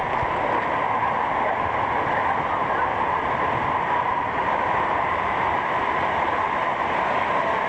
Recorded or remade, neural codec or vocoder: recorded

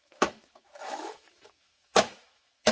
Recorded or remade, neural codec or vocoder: remade, autoencoder, DAC-VAE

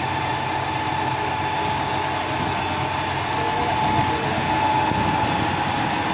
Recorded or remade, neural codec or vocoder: recorded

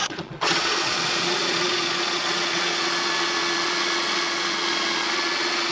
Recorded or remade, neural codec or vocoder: remade, vocoder, Vocos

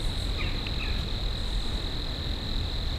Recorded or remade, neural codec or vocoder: remade, vocoder, BigVGAN v2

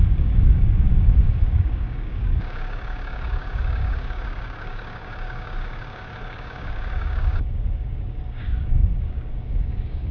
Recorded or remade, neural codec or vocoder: remade, codec, DAC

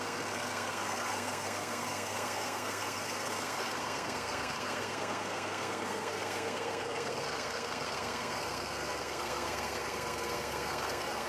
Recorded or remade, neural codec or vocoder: remade, codec, SNAC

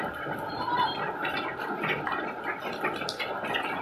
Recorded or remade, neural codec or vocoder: recorded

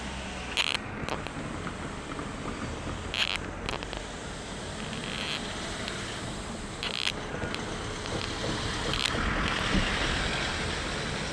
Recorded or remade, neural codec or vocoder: recorded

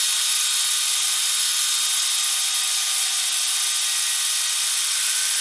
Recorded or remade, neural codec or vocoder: recorded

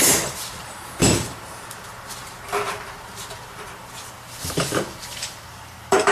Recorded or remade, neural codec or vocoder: remade, vocoder, BigVGAN v2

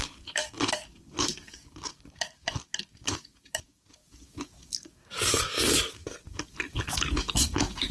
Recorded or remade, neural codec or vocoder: remade, codec, DAC